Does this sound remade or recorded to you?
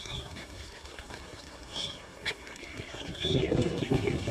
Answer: remade